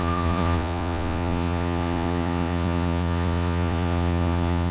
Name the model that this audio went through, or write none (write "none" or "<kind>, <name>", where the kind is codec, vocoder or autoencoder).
vocoder, Vocos